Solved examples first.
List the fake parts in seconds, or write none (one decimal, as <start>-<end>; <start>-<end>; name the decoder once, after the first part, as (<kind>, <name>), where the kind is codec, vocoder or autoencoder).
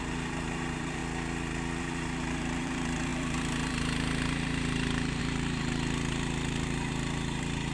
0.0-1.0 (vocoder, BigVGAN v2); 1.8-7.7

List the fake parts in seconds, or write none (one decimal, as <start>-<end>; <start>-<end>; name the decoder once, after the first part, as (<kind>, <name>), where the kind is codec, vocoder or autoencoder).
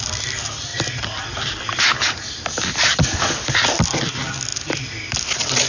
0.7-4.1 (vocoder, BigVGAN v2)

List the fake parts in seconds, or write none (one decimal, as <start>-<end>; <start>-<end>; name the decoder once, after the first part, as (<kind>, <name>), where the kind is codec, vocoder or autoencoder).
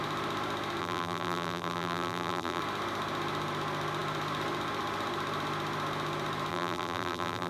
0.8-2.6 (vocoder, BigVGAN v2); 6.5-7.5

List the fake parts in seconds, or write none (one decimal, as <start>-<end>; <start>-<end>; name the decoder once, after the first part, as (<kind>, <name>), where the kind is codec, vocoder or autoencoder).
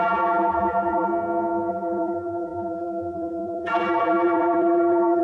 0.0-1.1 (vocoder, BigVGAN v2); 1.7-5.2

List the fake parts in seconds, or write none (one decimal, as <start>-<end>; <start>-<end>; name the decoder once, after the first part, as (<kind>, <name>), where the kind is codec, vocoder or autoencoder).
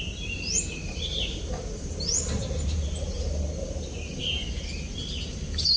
0.8-4.3 (vocoder, BigVGAN v2)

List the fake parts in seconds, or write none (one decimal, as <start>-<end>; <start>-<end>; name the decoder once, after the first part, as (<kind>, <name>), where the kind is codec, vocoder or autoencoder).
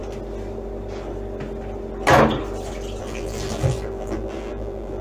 3.0-5.0 (vocoder, BigVGAN v2)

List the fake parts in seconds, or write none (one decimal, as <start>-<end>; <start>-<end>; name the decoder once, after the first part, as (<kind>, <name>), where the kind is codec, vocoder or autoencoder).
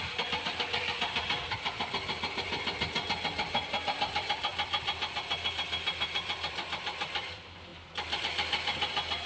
0.0-9.3 (vocoder, BigVGAN v2)